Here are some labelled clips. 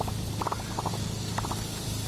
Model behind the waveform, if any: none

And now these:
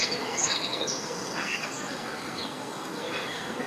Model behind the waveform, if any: codec, SNAC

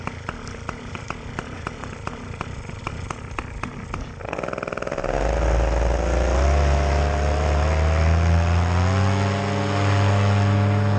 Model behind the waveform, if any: none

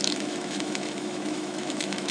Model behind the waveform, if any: autoencoder, DAC-VAE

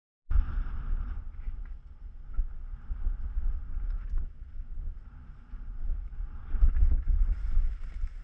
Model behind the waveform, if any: none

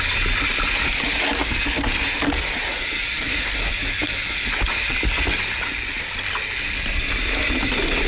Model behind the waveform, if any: none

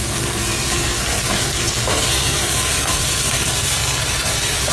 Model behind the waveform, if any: codec, SNAC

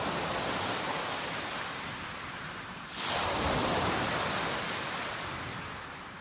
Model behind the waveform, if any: none